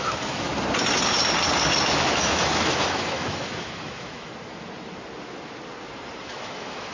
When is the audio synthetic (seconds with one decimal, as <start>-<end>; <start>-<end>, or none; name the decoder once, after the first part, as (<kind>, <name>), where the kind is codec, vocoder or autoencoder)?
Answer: 0.0-0.5 (autoencoder, DAC-VAE); 1.8-4.3; 6.2-6.9